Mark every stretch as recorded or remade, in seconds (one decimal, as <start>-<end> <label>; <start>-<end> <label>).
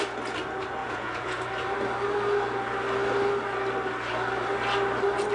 0.0-0.8 recorded; 0.8-1.4 remade; 1.4-5.3 recorded